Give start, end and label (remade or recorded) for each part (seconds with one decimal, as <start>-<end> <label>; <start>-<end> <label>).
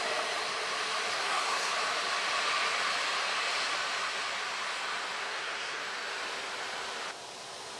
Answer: 0.0-1.1 recorded; 1.1-1.7 remade; 1.7-5.2 recorded; 5.2-5.8 remade; 5.8-7.8 recorded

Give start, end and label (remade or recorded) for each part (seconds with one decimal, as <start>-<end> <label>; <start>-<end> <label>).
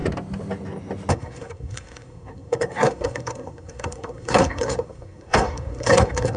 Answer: 0.0-1.1 recorded; 1.1-6.4 remade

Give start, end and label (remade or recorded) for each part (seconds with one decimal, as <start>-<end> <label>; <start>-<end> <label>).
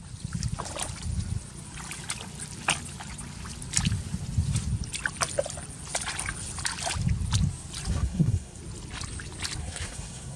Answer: 0.0-7.9 recorded; 7.9-8.6 remade; 8.6-9.6 recorded; 9.6-10.4 remade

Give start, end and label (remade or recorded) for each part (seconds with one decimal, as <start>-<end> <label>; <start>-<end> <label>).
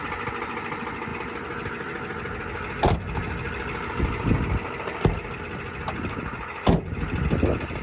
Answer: 0.0-7.8 recorded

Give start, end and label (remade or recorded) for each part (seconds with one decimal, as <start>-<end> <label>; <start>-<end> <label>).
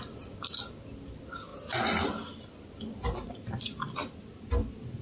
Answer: 0.0-5.0 recorded